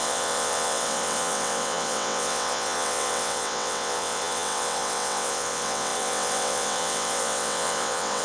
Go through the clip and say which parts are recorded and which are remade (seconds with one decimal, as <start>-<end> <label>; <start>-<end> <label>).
0.0-8.2 remade